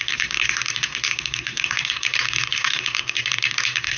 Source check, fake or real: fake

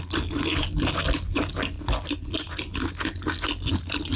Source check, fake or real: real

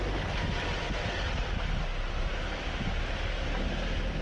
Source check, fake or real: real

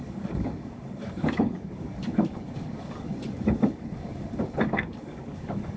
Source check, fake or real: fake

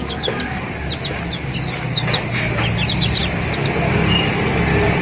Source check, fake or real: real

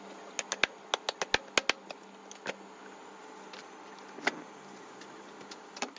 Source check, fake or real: real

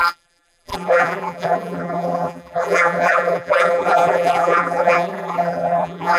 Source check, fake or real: fake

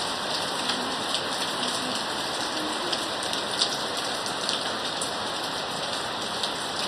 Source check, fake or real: real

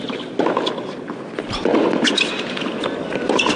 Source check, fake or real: real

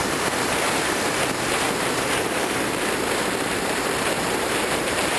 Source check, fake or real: fake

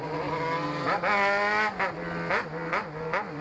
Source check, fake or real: real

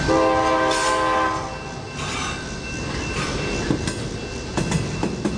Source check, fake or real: real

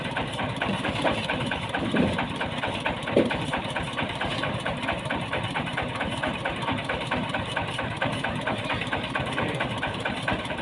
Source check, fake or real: fake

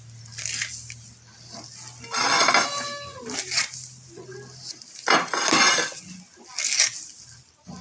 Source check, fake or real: real